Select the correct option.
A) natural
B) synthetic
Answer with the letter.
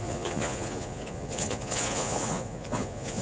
B